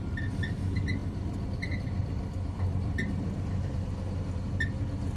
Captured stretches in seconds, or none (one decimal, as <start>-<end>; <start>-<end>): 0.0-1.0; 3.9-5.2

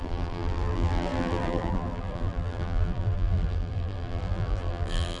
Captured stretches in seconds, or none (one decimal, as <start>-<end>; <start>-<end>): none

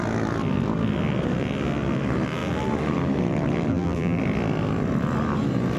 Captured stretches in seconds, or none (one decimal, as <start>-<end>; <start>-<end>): 0.0-3.7; 4.2-5.8